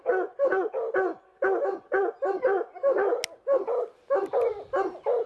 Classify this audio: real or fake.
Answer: real